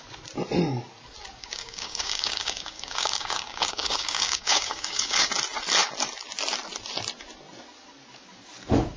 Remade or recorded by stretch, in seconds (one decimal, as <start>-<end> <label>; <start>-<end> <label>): 0.0-1.4 recorded; 1.4-5.3 remade; 5.3-9.0 recorded